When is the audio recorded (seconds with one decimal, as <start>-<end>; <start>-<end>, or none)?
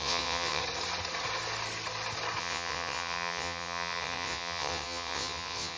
0.6-2.4